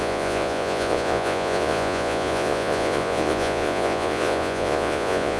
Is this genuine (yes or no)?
no